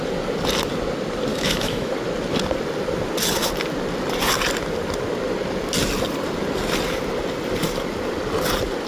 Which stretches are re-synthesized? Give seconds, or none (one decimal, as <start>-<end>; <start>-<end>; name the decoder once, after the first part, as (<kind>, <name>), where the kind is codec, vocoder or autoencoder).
1.3-1.9 (autoencoder, DAC-VAE)